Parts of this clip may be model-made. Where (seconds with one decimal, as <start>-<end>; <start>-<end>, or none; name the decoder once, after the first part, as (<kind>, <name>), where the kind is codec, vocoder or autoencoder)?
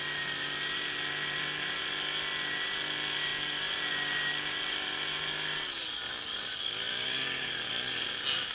none